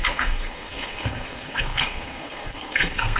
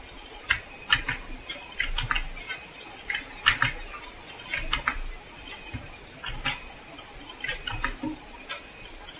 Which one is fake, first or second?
first